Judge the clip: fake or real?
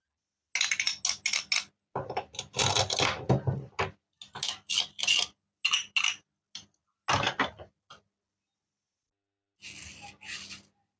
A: real